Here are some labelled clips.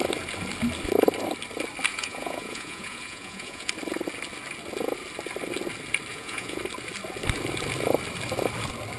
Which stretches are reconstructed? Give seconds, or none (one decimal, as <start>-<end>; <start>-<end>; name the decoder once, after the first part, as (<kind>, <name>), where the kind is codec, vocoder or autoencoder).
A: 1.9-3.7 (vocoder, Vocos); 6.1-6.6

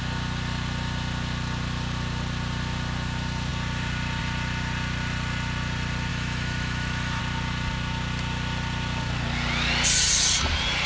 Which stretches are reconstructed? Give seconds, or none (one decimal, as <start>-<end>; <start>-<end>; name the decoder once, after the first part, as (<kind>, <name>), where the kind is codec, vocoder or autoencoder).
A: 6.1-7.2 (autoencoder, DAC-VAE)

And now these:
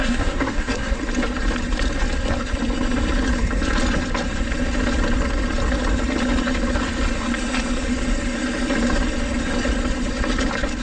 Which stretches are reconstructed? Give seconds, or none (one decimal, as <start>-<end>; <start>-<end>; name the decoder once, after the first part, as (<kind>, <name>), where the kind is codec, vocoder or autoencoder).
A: 0.0-1.0 (codec, SNAC)

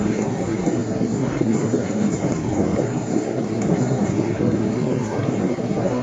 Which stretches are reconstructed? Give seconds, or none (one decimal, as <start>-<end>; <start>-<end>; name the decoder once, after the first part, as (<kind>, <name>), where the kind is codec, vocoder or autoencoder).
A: 0.0-6.0 (codec, SNAC)